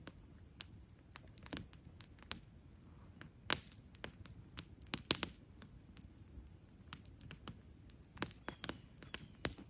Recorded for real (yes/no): yes